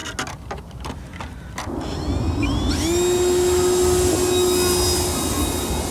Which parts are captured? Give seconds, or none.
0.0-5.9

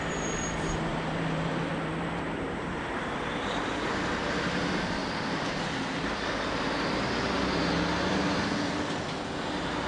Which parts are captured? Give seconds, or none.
0.0-0.9; 2.9-5.0; 5.5-9.9

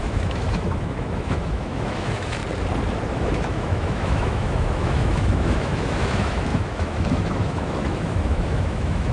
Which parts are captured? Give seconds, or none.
2.4-3.1

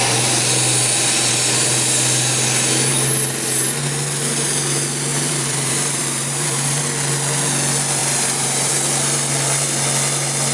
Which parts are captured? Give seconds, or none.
0.0-5.1; 6.8-8.0; 8.7-10.5

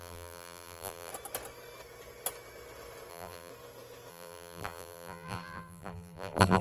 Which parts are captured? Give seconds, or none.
1.1-3.1; 3.5-4.1

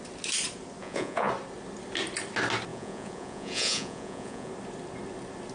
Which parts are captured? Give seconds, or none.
0.0-0.8; 1.3-2.7; 4.5-5.5